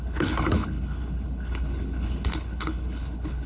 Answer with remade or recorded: remade